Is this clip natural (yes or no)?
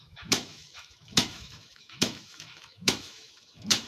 no